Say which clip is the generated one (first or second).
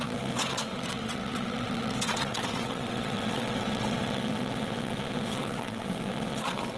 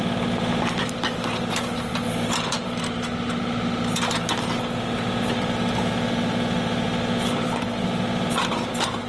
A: first